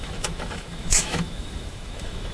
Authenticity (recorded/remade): remade